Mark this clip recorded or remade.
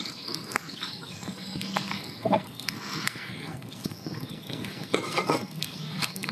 remade